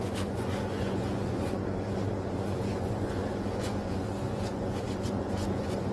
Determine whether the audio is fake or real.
fake